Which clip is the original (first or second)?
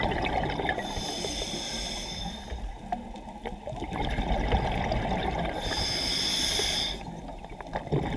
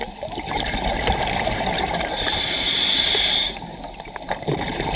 first